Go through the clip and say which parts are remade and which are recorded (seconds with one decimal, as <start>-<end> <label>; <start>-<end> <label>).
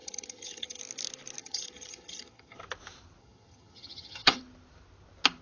0.0-0.8 remade; 0.8-1.4 recorded; 1.4-2.6 remade; 2.6-3.2 recorded; 3.2-4.4 remade; 4.4-5.4 recorded